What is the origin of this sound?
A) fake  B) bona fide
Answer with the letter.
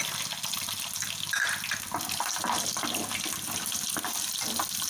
B